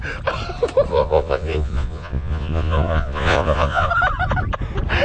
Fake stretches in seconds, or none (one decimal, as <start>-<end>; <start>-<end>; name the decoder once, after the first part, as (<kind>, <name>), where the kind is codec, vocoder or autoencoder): 0.9-3.9 (vocoder, Vocos)